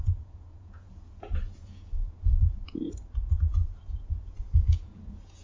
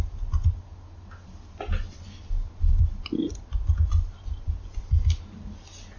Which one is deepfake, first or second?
first